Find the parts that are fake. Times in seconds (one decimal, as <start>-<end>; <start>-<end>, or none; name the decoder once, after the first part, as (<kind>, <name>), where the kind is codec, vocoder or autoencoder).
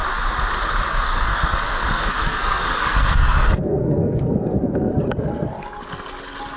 0.9-4.9 (codec, SNAC)